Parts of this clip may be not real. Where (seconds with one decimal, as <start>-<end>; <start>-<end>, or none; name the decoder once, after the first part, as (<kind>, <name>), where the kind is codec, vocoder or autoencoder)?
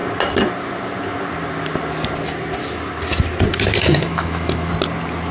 3.9-4.7 (autoencoder, DAC-VAE)